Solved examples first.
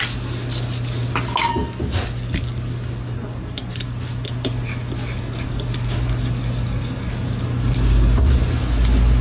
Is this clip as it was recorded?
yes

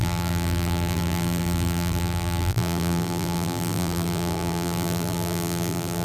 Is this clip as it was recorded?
no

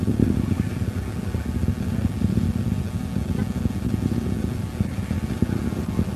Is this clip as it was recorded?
yes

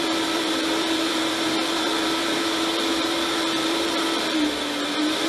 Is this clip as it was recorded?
no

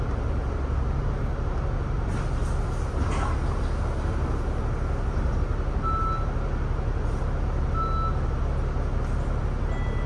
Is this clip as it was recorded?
yes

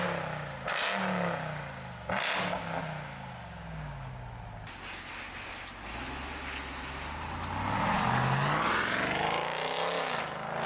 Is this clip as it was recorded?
yes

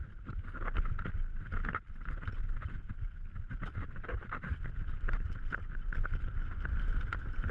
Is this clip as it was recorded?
yes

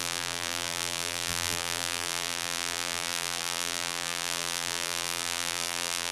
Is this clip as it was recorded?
no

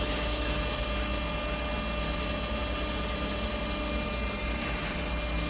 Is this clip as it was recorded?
yes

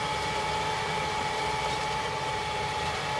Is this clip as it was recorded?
yes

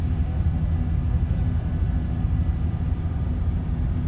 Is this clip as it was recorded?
yes